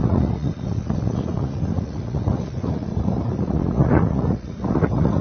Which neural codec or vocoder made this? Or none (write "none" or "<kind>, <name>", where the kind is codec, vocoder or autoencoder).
vocoder, Vocos